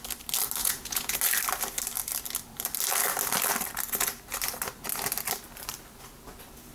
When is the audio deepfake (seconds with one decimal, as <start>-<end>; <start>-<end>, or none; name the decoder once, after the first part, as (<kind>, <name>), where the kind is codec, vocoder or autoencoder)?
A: 0.6-1.2 (vocoder, Vocos)